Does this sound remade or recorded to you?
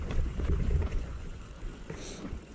remade